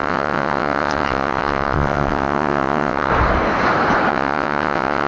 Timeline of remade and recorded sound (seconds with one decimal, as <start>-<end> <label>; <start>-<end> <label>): 0.0-3.1 remade; 3.1-4.1 recorded; 4.1-5.1 remade